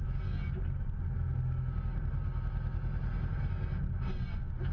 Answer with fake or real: real